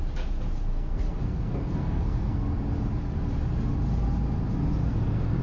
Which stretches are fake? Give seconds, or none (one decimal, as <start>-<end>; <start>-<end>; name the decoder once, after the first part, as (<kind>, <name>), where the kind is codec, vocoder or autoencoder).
0.7-2.4 (codec, SNAC); 4.8-5.4